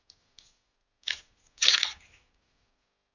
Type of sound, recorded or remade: recorded